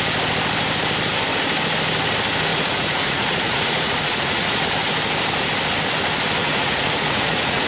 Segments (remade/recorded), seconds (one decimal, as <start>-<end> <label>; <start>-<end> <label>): 0.0-2.5 recorded; 2.5-4.6 remade; 4.6-6.4 recorded; 6.4-7.7 remade